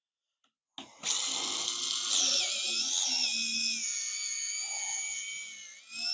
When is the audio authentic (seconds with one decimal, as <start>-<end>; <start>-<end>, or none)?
0.0-6.1